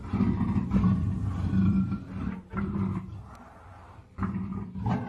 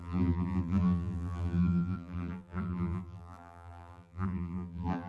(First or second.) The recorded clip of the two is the first